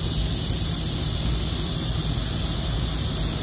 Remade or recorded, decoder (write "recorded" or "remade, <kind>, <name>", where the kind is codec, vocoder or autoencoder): recorded